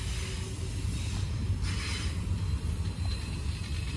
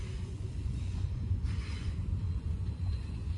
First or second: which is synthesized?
second